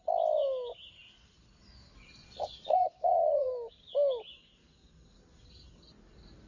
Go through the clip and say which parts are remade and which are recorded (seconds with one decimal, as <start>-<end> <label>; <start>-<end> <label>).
0.0-2.2 recorded; 2.2-3.5 remade; 3.5-6.5 recorded